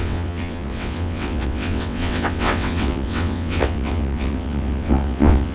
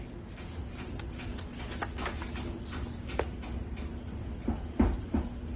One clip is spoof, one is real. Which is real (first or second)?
second